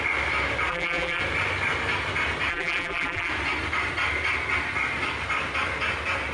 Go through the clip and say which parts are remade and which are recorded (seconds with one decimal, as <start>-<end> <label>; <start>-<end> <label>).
0.0-0.7 recorded; 0.7-1.2 remade; 1.2-2.5 recorded; 2.5-3.3 remade; 3.3-6.3 recorded